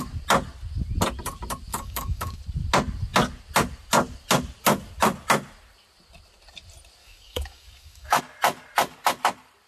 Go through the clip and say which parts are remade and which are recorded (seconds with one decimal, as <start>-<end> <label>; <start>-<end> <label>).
0.0-1.7 recorded; 1.7-2.4 remade; 2.4-7.0 recorded; 7.0-8.2 remade; 8.2-9.7 recorded